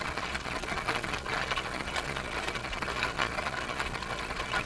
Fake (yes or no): yes